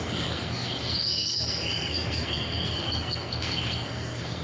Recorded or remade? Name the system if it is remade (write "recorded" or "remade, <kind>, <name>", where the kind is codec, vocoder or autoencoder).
remade, codec, SNAC